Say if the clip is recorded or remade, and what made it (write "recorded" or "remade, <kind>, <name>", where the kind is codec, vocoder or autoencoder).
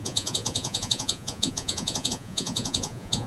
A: remade, vocoder, Vocos